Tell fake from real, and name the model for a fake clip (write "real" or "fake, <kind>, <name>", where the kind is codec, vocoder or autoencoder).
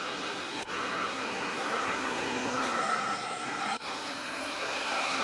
fake, codec, SNAC